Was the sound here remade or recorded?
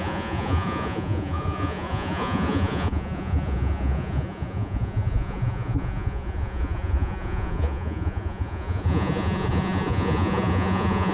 remade